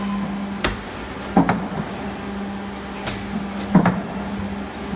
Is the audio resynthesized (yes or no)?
no